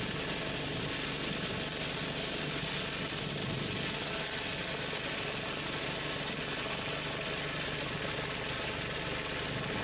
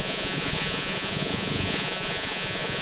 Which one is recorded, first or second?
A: first